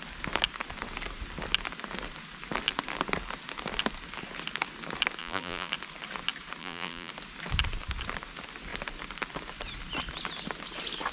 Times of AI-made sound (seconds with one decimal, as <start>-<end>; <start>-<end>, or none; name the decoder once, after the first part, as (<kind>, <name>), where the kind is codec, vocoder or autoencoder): 5.2-5.7 (vocoder, BigVGAN v2); 6.6-7.1